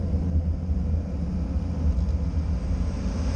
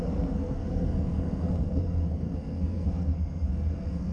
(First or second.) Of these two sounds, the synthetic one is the second